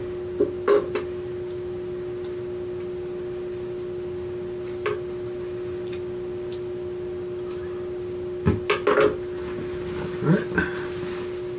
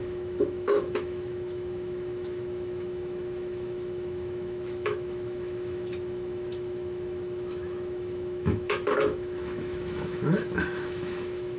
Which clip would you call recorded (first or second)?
first